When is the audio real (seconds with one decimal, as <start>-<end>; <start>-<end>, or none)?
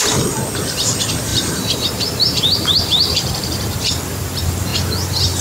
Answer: 0.0-1.3; 4.0-5.4